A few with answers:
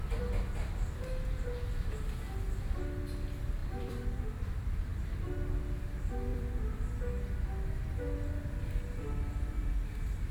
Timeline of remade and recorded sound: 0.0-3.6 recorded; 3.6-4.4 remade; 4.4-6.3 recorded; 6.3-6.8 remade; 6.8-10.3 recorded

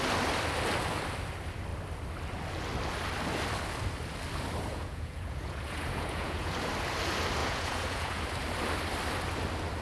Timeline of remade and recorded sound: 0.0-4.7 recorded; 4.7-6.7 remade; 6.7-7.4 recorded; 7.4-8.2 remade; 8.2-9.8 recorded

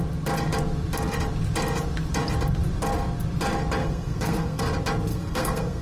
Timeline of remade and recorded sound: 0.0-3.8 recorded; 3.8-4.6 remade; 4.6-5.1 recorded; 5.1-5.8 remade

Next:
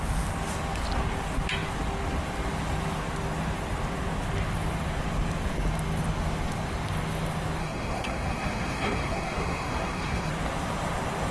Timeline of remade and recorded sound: 0.0-7.6 recorded; 7.6-10.3 remade; 10.3-11.3 recorded

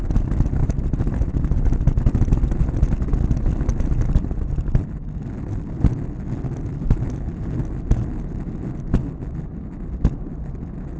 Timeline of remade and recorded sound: 0.0-0.6 recorded; 0.6-2.0 remade; 2.0-3.7 recorded; 3.7-5.3 remade; 5.3-11.0 recorded

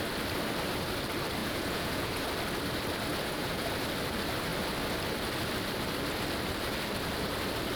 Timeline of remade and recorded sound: 0.0-1.4 recorded; 1.4-2.2 remade; 2.2-3.1 recorded; 3.1-3.7 remade; 3.7-7.8 recorded

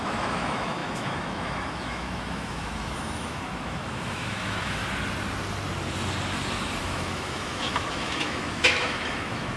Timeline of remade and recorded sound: 0.0-4.8 remade; 4.8-6.8 recorded; 6.8-9.6 remade

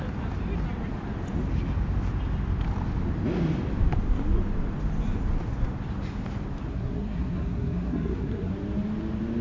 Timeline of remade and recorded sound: 0.0-6.7 recorded; 6.7-8.5 remade; 8.5-9.4 recorded